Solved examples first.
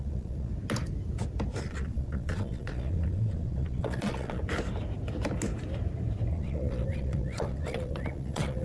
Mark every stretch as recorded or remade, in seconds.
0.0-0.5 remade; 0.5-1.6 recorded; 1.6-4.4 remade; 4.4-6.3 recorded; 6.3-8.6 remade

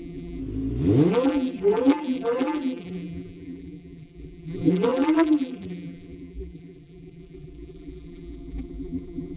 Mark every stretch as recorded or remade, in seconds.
0.0-0.4 remade; 0.4-1.1 recorded; 1.1-9.4 remade

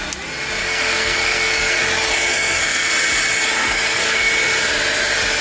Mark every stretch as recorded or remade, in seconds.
0.0-0.6 recorded; 0.6-1.8 remade; 1.8-2.3 recorded; 2.3-2.9 remade; 2.9-3.6 recorded; 3.6-4.3 remade; 4.3-5.4 recorded

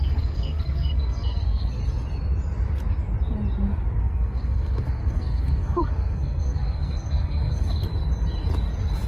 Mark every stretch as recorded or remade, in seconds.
0.0-1.8 remade; 1.8-4.0 recorded; 4.0-7.9 remade; 7.9-9.1 recorded

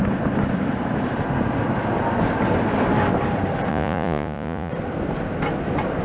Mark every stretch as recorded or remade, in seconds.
0.0-3.7 recorded; 3.7-4.7 remade; 4.7-6.0 recorded

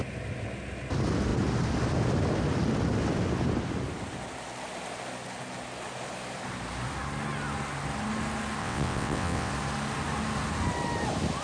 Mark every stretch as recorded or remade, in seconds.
0.0-8.6 recorded; 8.6-9.5 remade; 9.5-11.4 recorded

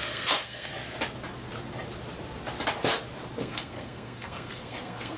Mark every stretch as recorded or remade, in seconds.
0.0-0.7 remade; 0.7-3.4 recorded; 3.4-5.2 remade

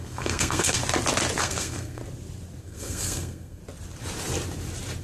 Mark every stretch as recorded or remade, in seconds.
0.0-0.8 remade; 0.8-1.4 recorded; 1.4-2.0 remade; 2.0-2.6 recorded; 2.6-3.6 remade; 3.6-5.0 recorded